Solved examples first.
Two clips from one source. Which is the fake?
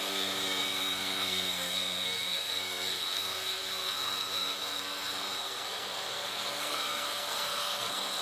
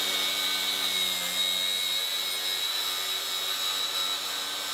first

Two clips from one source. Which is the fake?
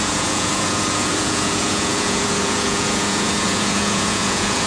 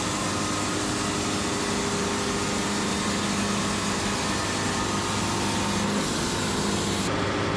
first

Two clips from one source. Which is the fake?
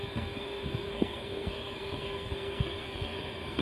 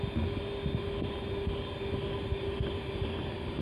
first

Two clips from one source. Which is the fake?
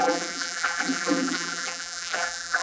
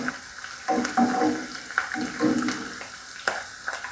first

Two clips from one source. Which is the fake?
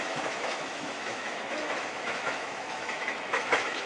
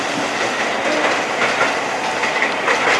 first